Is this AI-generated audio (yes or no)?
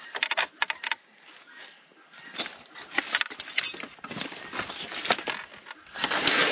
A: no